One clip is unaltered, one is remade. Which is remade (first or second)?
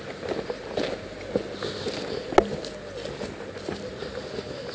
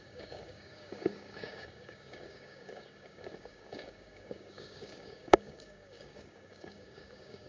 second